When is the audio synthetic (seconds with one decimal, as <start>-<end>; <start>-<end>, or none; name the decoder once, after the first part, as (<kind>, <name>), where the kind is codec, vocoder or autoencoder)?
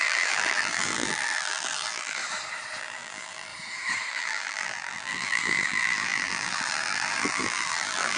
0.0-2.2 (vocoder, BigVGAN v2); 2.8-3.5; 4.1-8.2